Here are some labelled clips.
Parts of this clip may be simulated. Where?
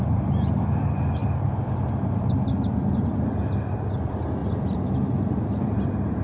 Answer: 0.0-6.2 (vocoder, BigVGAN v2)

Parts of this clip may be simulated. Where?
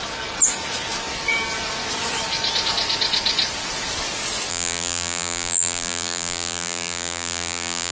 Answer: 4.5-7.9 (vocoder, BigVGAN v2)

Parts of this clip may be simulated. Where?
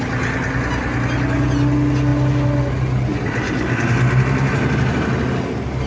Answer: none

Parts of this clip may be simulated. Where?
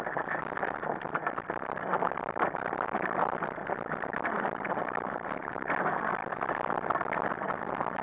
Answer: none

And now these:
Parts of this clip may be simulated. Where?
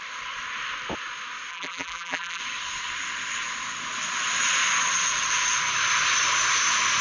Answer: 1.5-2.4 (vocoder, BigVGAN v2)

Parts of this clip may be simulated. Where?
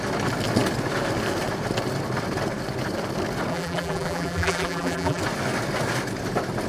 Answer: 3.5-5.2 (vocoder, BigVGAN v2)